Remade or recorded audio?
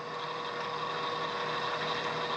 recorded